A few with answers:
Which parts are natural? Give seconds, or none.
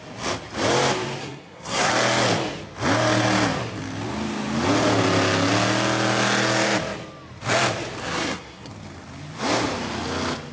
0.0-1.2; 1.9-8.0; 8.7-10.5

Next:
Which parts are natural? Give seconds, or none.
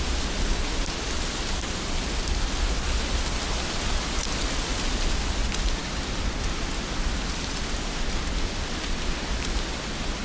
0.0-10.2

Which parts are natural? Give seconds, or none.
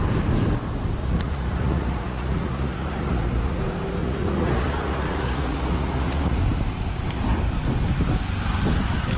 0.0-1.0; 3.6-4.0; 6.4-9.2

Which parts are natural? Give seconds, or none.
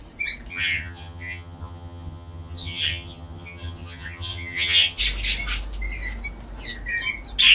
0.0-0.5; 5.0-7.5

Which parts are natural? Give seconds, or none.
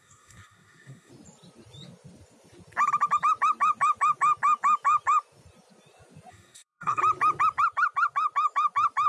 1.1-6.3; 7.0-9.1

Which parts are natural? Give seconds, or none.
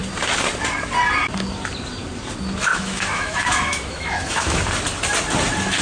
0.0-2.7; 4.6-5.8